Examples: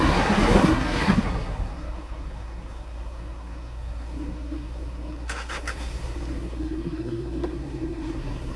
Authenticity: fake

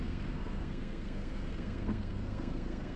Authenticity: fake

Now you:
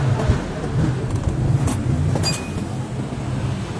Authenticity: real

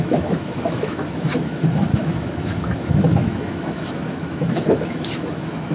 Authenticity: fake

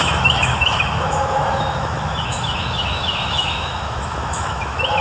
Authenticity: fake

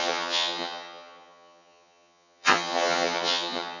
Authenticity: fake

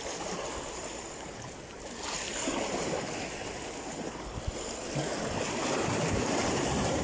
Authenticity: real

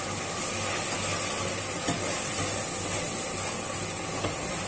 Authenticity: real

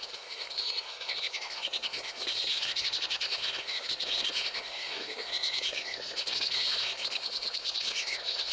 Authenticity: fake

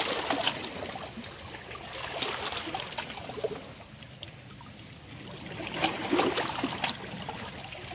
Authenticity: real